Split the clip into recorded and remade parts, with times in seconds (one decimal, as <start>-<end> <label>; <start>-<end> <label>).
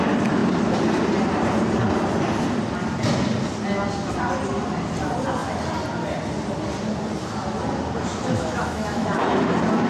0.0-8.1 recorded; 8.1-9.5 remade; 9.5-9.9 recorded